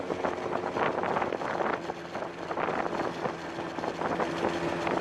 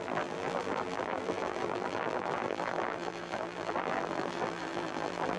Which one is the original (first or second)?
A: first